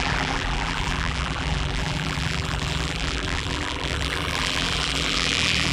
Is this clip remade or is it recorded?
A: remade